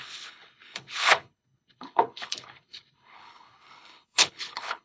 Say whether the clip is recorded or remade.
remade